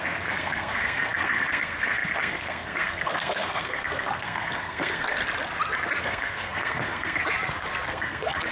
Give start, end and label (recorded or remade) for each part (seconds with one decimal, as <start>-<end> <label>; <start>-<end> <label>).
0.0-5.2 remade; 5.2-6.0 recorded; 6.0-7.2 remade; 7.2-7.9 recorded; 7.9-8.5 remade